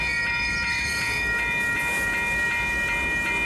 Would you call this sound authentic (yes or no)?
yes